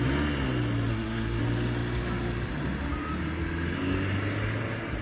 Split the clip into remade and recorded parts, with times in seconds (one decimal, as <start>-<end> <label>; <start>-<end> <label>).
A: 0.0-0.9 recorded; 0.9-1.4 remade; 1.4-5.0 recorded